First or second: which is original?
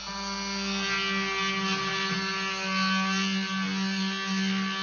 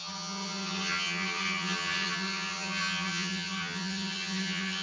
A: first